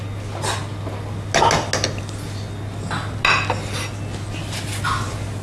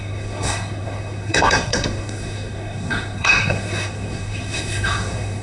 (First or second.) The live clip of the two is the first